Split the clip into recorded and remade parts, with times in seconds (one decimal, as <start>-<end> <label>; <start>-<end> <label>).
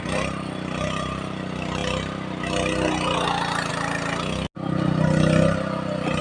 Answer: 0.0-6.2 recorded